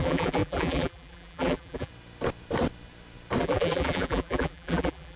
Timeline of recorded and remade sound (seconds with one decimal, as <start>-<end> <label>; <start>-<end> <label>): 0.0-1.9 remade; 1.9-3.4 recorded; 3.4-5.2 remade